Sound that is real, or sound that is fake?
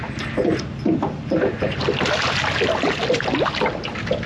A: real